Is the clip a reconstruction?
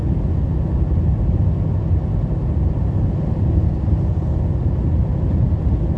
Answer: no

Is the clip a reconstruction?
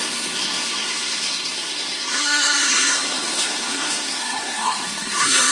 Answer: yes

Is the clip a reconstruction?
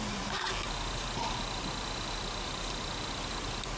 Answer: no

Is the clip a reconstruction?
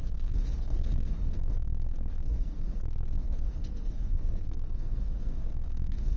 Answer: yes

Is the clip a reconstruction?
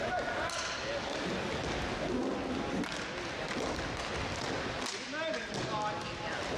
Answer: no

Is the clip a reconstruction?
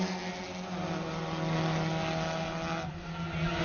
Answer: no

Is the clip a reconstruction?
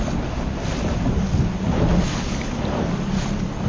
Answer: no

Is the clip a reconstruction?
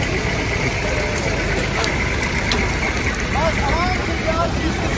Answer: no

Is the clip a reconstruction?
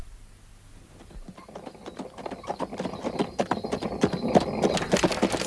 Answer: no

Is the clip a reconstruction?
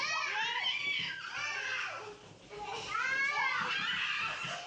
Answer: no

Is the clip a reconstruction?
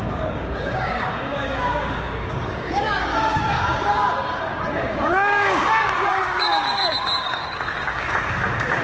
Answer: yes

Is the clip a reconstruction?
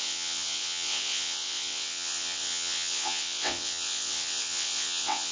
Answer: yes